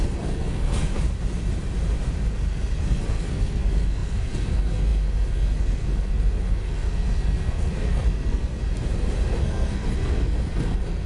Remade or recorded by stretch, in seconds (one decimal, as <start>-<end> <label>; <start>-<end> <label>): 0.0-0.9 remade; 0.9-2.3 recorded; 2.3-8.6 remade; 8.6-9.4 recorded; 9.4-11.1 remade